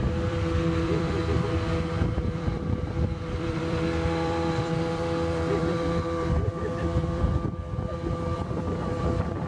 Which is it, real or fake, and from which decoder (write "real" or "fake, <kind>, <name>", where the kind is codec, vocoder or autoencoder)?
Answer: fake, vocoder, BigVGAN v2